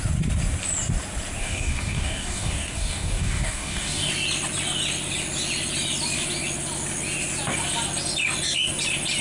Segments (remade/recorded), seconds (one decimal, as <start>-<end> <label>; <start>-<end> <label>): 0.0-1.4 recorded; 1.4-4.1 remade; 4.1-9.2 recorded